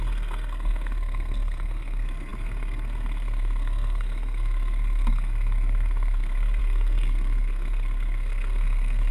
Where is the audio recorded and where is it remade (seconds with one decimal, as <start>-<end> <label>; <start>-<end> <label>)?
0.0-9.1 remade